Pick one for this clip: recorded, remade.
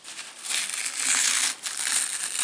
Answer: recorded